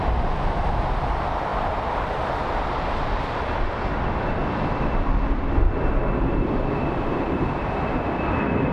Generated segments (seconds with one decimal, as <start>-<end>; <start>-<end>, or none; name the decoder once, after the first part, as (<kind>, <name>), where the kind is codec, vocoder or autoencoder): 6.8-7.8 (vocoder, BigVGAN v2)

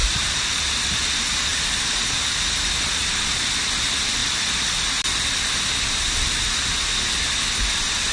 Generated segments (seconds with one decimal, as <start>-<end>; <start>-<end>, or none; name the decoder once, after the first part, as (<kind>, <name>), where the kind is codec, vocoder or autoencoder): 0.0-0.6 (vocoder, BigVGAN v2)

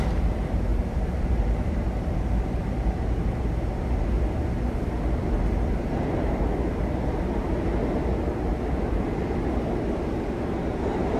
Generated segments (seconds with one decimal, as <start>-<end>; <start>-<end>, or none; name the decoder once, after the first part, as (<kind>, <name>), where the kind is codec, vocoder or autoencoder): 0.7-3.3 (vocoder, BigVGAN v2)

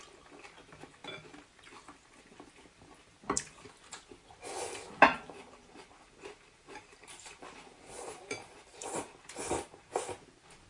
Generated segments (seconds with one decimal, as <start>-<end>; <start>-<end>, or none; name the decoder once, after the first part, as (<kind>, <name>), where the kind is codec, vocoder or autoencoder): 5.1-9.9 (vocoder, BigVGAN v2)

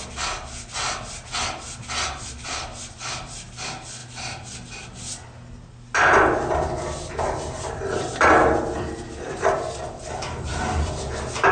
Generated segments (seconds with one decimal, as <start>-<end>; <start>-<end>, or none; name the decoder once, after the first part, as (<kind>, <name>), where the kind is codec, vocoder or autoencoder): none

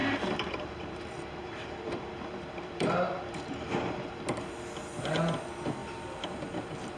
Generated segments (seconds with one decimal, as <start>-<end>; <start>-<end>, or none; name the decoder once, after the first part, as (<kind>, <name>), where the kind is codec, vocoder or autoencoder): 0.0-4.2 (vocoder, BigVGAN v2)

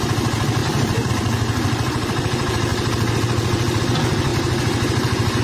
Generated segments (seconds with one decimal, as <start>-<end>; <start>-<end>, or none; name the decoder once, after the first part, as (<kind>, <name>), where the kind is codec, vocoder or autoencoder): 0.6-1.1 (vocoder, BigVGAN v2); 4.3-5.4